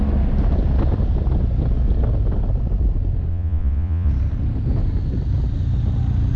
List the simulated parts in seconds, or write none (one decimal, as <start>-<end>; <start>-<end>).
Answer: 3.3-4.1